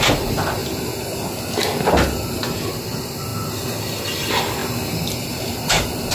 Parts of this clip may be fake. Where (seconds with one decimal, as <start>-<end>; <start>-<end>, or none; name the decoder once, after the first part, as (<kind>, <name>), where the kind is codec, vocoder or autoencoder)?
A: 0.0-0.6 (vocoder, BigVGAN v2); 2.6-3.3; 3.8-4.6; 5.2-6.1